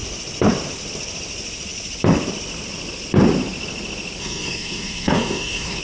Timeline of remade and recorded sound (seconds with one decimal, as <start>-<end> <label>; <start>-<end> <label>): 0.0-4.2 recorded; 4.2-5.8 remade